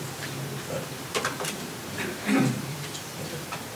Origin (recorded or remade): remade